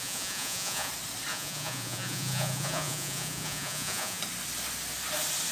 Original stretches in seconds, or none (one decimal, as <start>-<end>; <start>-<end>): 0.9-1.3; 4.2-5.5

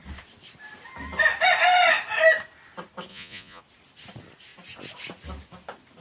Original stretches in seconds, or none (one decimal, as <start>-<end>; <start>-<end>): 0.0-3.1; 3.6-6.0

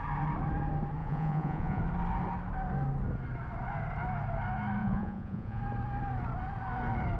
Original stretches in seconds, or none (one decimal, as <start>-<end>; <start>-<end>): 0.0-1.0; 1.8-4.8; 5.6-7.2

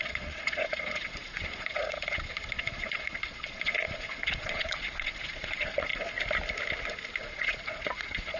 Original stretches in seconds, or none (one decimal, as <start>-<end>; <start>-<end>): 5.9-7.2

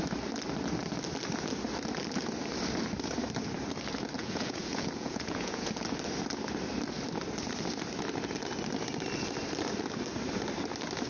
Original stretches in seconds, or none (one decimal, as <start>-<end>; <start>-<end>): 0.0-4.2; 5.7-11.1

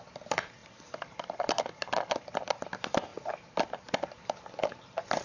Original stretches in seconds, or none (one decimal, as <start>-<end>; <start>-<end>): 0.0-5.2

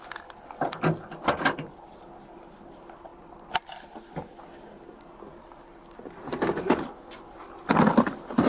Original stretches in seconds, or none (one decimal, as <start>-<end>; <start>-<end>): 0.0-8.5

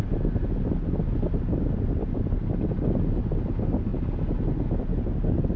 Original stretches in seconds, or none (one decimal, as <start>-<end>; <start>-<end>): 0.0-5.6